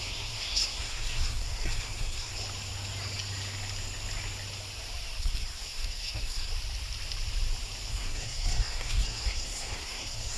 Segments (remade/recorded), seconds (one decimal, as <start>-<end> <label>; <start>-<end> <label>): 0.0-2.3 remade; 2.3-5.2 recorded; 5.2-6.5 remade; 6.5-7.9 recorded; 7.9-10.4 remade